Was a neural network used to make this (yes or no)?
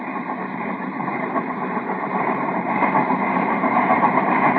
yes